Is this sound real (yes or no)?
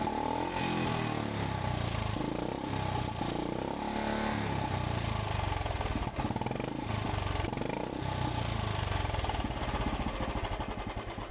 yes